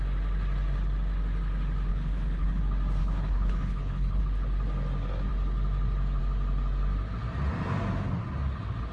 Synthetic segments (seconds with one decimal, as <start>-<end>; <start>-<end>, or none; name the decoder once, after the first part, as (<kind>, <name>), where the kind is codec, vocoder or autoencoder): 1.9-2.6 (codec, HILCodec); 3.0-4.2